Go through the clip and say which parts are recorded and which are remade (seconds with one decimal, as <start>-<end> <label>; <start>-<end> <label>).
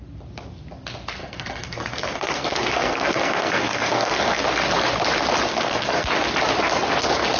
0.0-1.2 recorded; 1.2-4.4 remade; 4.4-5.5 recorded; 5.5-6.1 remade; 6.1-7.4 recorded